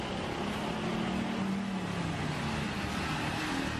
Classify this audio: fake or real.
real